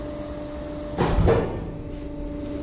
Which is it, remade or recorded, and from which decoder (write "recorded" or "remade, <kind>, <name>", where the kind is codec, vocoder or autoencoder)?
recorded